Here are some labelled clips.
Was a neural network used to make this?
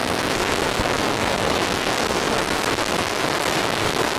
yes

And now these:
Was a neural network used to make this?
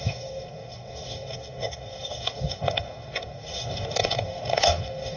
yes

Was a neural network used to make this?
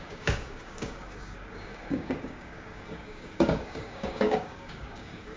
yes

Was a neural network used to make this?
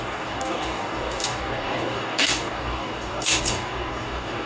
yes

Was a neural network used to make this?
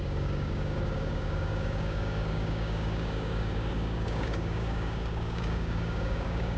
yes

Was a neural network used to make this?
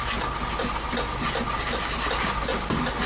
no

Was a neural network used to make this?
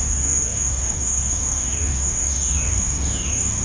yes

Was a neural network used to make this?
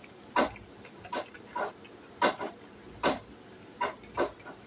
no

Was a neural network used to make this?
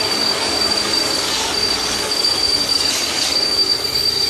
yes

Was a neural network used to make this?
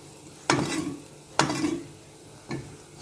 no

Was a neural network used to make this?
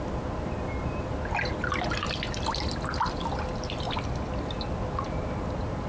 no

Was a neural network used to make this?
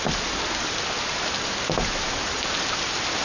no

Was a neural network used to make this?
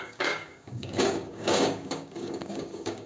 yes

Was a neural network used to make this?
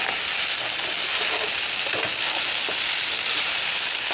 no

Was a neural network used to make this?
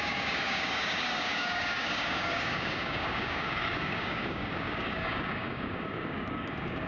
yes